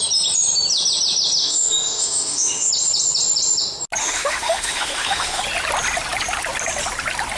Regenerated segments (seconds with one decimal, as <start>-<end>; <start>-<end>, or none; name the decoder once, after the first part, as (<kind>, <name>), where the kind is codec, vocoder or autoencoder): 1.4-2.7 (autoencoder, DAC-VAE); 4.0-5.4

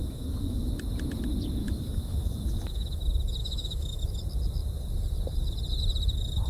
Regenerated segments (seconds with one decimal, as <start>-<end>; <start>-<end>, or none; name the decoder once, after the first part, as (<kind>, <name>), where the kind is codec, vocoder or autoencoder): 0.0-0.7 (autoencoder, DAC-VAE); 1.6-3.0; 3.4-4.0

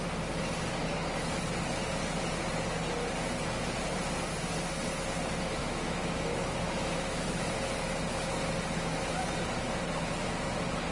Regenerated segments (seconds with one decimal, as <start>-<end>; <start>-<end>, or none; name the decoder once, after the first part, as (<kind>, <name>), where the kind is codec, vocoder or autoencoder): 5.6-7.5 (autoencoder, DAC-VAE)

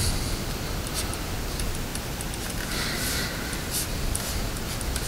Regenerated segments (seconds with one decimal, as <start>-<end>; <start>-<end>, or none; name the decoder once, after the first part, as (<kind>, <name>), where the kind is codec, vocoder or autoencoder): none

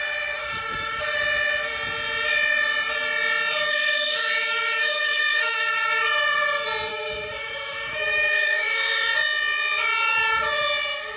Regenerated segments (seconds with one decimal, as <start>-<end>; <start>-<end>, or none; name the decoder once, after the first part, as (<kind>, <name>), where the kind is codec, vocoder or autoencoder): 0.4-1.0 (autoencoder, DAC-VAE); 3.7-5.6; 6.9-9.1

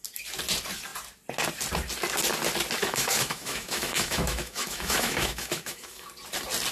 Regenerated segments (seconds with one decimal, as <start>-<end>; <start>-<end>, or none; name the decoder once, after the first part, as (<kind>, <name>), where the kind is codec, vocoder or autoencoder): 2.8-6.1 (autoencoder, DAC-VAE)